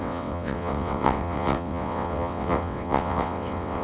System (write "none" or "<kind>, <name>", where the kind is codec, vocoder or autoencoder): vocoder, WaveNeXt